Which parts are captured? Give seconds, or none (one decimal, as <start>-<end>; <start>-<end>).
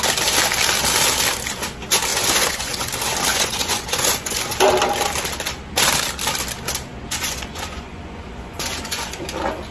0.0-2.1; 2.9-3.3; 4.5-6.9; 9.2-9.7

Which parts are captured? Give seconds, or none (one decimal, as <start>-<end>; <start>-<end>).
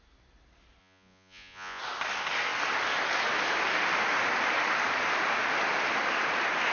0.0-0.8; 1.8-6.7